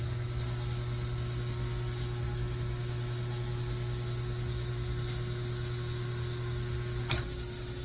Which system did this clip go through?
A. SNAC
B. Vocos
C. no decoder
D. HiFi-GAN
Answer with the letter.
C